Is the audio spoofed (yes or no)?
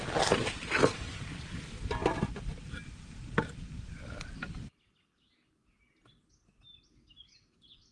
no